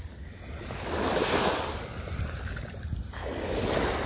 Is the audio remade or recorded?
recorded